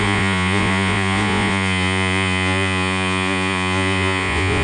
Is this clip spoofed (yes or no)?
yes